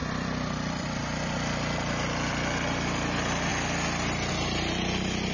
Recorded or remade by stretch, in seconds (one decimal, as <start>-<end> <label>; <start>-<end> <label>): 0.0-1.0 remade; 1.0-3.5 recorded; 3.5-4.3 remade; 4.3-5.3 recorded